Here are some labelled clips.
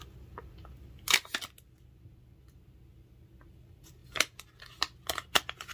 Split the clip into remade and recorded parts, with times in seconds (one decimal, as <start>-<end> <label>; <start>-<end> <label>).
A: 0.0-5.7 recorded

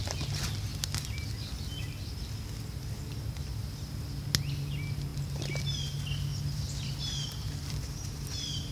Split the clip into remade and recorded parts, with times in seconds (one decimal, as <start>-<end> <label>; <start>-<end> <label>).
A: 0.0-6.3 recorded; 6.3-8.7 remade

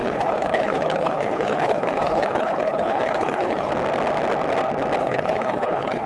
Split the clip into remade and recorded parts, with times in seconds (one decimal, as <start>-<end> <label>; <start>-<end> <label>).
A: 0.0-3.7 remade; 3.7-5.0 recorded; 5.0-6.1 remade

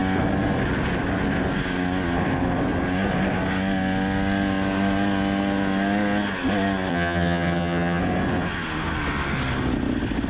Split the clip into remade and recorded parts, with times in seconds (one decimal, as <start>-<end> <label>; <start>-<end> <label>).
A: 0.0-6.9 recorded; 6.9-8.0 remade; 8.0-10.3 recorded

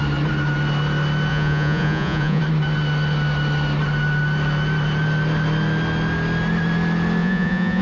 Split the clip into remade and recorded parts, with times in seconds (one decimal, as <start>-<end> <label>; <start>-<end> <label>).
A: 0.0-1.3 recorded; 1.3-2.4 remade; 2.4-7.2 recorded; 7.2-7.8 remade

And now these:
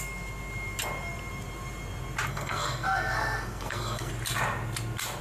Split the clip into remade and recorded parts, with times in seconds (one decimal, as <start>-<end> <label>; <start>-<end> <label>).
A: 0.0-2.3 recorded; 2.3-4.1 remade; 4.1-5.2 recorded